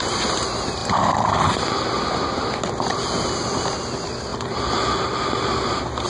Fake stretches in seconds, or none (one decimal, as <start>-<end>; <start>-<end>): 4.3-5.3